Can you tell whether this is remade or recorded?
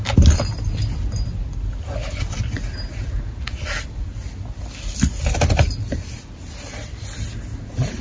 recorded